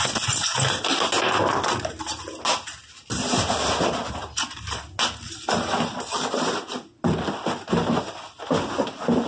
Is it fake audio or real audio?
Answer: real